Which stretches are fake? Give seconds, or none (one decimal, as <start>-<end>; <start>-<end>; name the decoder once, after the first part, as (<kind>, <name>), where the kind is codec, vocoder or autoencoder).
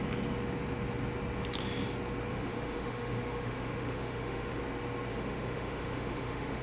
2.3-4.6 (autoencoder, DAC-VAE); 5.1-6.6